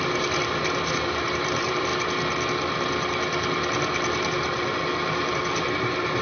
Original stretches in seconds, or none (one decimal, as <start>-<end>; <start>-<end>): 1.9-5.6